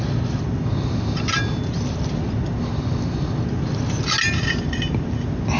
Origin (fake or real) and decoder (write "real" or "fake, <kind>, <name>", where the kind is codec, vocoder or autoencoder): real